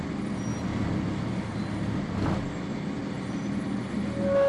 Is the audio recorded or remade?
recorded